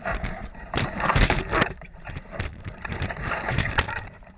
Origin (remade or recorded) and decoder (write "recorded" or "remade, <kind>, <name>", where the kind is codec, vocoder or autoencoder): remade, vocoder, BigVGAN v2